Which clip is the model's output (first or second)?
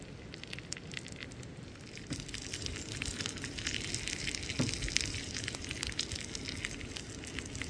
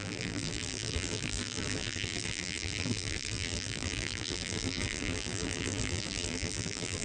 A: second